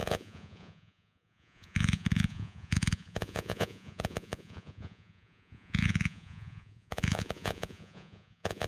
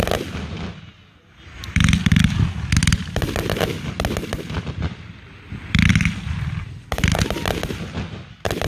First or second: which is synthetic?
first